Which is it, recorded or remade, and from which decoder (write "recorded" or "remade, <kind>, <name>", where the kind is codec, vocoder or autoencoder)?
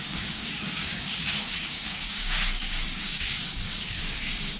remade, codec, DAC